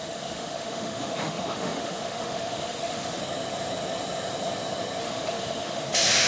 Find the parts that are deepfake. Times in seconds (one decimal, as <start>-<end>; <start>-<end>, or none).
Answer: 0.0-3.2; 5.0-6.3